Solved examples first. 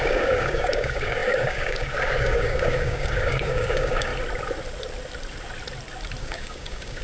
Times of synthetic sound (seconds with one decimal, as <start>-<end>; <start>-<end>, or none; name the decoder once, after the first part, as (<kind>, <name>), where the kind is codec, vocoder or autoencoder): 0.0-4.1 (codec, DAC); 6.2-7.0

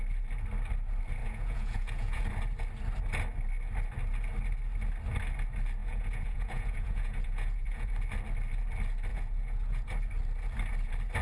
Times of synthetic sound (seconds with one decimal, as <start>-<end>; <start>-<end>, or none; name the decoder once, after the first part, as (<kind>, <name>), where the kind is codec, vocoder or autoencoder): 1.2-2.2 (vocoder, Vocos); 5.8-7.9; 9.1-9.9

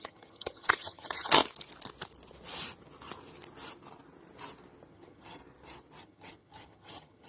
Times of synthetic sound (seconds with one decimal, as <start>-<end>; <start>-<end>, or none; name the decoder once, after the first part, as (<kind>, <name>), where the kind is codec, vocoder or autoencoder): 0.0-1.4 (vocoder, HiFi-GAN); 4.9-5.4; 6.0-7.3